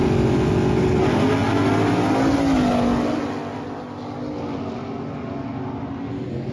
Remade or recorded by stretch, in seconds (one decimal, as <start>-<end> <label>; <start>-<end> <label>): 0.0-0.5 remade; 0.5-6.5 recorded